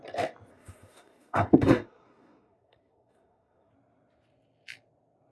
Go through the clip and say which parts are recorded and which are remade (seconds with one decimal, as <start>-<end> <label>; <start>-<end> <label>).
0.0-0.5 recorded; 0.5-3.7 remade; 3.7-5.3 recorded